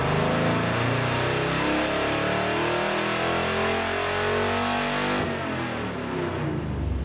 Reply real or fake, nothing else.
real